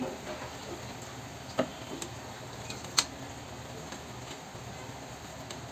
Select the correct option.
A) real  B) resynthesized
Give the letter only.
A